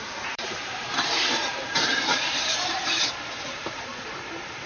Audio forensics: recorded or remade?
remade